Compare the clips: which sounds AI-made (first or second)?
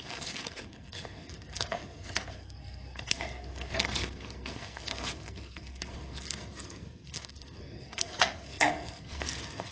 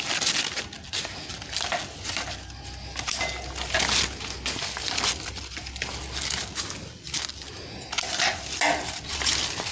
first